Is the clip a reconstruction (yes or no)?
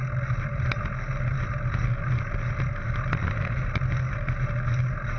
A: no